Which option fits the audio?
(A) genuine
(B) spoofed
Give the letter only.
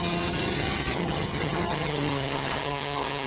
B